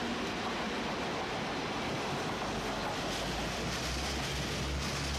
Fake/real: real